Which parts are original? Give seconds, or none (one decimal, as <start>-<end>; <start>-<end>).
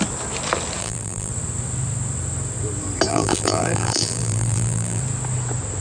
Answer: 0.0-0.8; 1.3-3.1; 5.0-5.8